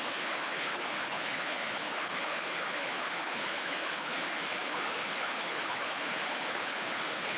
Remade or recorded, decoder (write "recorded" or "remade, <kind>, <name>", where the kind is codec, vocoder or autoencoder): remade, codec, HILCodec